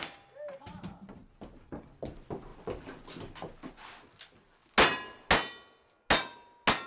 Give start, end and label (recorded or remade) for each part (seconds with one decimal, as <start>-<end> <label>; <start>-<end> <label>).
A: 0.0-1.2 recorded; 1.2-1.9 remade; 1.9-6.9 recorded